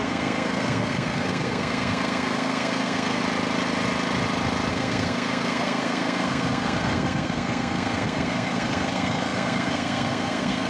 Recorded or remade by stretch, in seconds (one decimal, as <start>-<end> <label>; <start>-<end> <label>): 0.0-3.2 remade; 3.2-4.7 recorded; 4.7-10.7 remade